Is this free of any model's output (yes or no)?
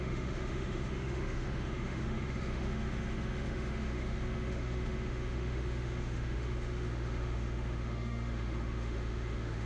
no